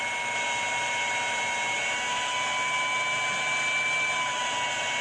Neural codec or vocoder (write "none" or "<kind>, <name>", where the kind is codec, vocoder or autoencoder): none